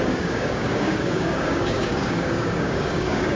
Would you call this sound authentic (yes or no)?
no